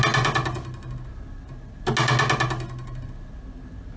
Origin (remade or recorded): recorded